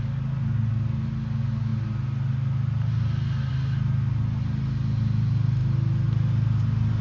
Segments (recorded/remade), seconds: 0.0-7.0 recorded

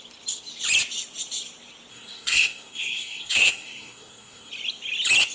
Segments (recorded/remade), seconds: 0.0-1.9 recorded; 1.9-4.5 remade; 4.5-5.3 recorded

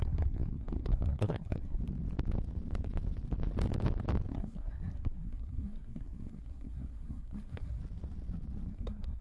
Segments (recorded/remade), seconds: 0.0-1.8 remade; 1.8-4.3 recorded; 4.3-7.8 remade; 7.8-8.7 recorded; 8.7-9.2 remade

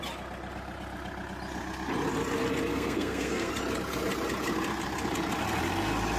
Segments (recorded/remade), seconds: 0.0-2.7 recorded; 2.7-3.5 remade; 3.5-6.2 recorded

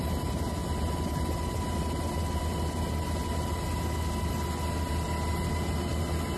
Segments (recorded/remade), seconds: 0.0-6.4 recorded

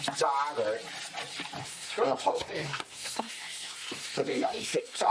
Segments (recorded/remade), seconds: 0.0-1.6 recorded; 1.6-5.1 remade

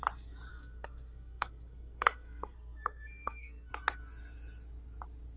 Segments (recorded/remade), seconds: 0.0-0.5 recorded; 0.5-3.7 remade; 3.7-5.4 recorded